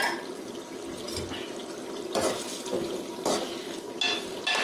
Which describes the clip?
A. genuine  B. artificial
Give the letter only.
A